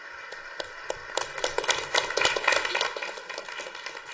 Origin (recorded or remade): recorded